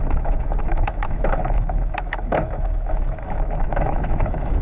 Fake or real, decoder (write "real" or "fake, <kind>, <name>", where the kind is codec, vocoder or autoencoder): fake, autoencoder, DAC-VAE